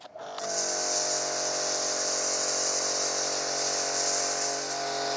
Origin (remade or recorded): recorded